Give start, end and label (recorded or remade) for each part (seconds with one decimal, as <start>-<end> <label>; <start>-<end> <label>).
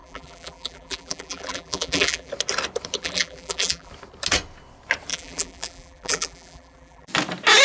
0.0-2.3 remade; 2.3-3.0 recorded; 3.0-3.9 remade; 3.9-5.1 recorded; 5.1-7.1 remade; 7.1-7.6 recorded